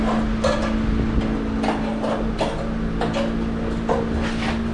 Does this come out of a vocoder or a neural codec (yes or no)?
no